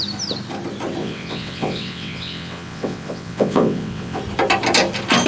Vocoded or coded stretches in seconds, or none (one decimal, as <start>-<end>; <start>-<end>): 1.0-4.2